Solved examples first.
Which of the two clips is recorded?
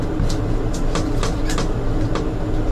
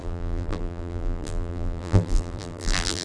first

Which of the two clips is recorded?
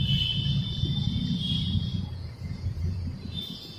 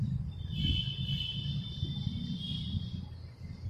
second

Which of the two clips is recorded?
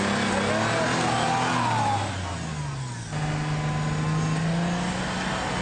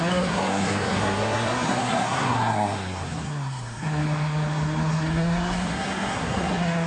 first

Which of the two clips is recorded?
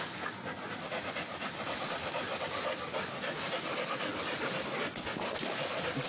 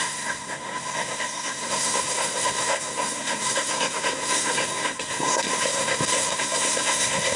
first